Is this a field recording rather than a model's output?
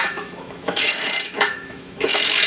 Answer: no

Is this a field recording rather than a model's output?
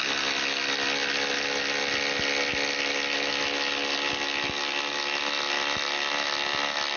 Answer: yes